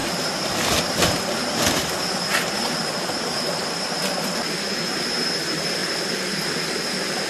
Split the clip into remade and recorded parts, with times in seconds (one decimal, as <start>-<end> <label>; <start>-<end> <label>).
0.0-2.3 remade; 2.3-7.3 recorded